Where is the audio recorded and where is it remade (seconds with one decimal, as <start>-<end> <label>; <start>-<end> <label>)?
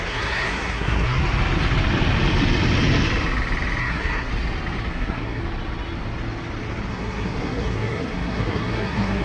0.0-1.2 remade; 1.2-3.8 recorded; 3.8-4.3 remade; 4.3-4.9 recorded; 4.9-5.4 remade; 5.4-6.9 recorded; 6.9-9.2 remade